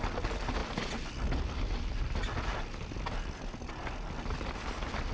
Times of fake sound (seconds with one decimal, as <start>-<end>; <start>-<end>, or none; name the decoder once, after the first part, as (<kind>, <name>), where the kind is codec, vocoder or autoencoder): none